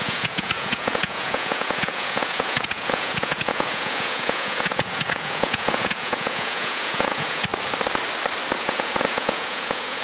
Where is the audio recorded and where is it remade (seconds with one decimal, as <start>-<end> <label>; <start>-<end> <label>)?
0.0-7.5 remade; 7.5-8.6 recorded; 8.6-10.0 remade